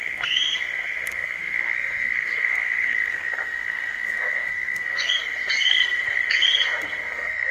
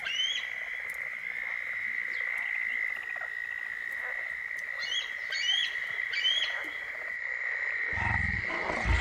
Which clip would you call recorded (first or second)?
second